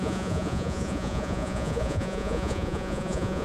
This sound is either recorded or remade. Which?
remade